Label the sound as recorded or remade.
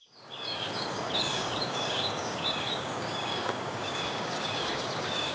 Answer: remade